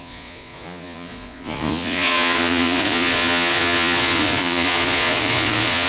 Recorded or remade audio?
remade